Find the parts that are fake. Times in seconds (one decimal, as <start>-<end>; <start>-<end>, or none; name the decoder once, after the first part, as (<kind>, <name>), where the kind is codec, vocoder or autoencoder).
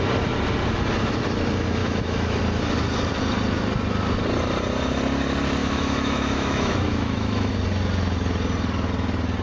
1.8-2.4 (autoencoder, DAC-VAE); 5.6-7.5